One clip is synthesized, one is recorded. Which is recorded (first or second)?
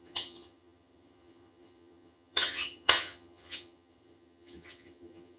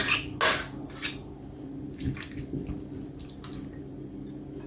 second